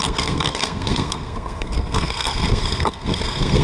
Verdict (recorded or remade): remade